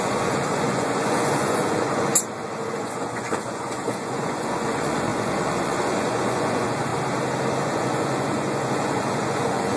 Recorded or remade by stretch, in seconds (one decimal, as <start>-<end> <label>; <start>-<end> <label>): 0.0-2.1 remade; 2.1-2.7 recorded; 2.7-6.9 remade; 6.9-7.6 recorded; 7.6-9.8 remade

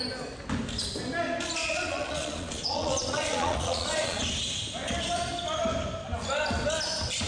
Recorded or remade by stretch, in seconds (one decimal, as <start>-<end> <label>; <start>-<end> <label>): 0.0-1.6 recorded; 1.6-4.2 remade; 4.2-7.3 recorded

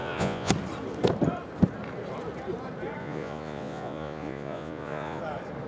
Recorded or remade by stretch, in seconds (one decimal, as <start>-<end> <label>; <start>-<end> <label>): 0.0-0.5 remade; 0.5-3.0 recorded; 3.0-5.2 remade; 5.2-5.7 recorded

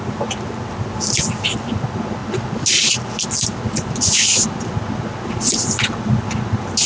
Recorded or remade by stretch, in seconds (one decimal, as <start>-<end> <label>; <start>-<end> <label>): 0.0-6.9 recorded

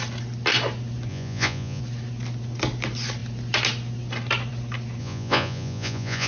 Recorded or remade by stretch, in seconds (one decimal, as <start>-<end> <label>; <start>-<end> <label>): 0.0-1.1 recorded; 1.1-1.8 remade; 1.8-5.0 recorded; 5.0-6.3 remade

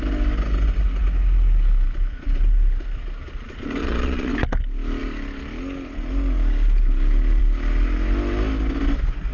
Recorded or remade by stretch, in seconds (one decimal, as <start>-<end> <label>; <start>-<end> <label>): 0.0-3.8 recorded; 3.8-4.3 remade; 4.3-9.3 recorded

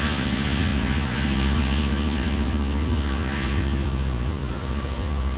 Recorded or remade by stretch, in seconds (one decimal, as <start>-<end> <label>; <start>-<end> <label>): 0.0-5.4 remade